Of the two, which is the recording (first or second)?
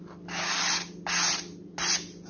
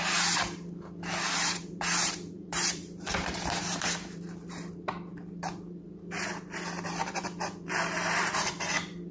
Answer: first